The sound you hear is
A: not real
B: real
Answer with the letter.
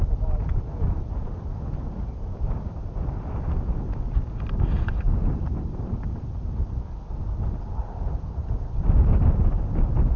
B